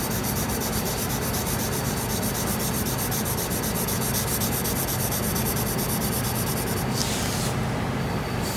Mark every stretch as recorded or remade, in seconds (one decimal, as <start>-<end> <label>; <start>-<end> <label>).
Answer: 0.0-7.0 remade; 7.0-8.0 recorded; 8.0-8.6 remade